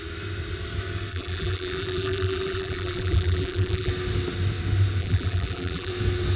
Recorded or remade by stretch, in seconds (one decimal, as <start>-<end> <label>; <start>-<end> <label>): 0.0-1.1 recorded; 1.1-3.9 remade; 3.9-5.0 recorded; 5.0-5.9 remade; 5.9-6.4 recorded